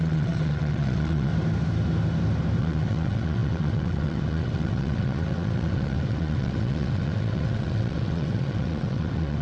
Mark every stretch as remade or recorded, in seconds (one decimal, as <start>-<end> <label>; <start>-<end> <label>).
0.0-1.3 remade; 1.3-2.6 recorded; 2.6-9.4 remade